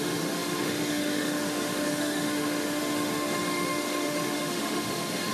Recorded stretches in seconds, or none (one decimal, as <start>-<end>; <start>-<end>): none